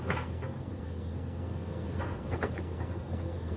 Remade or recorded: remade